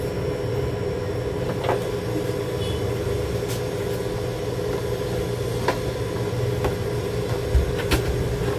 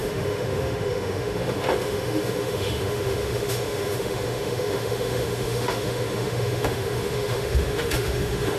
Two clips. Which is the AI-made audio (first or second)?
second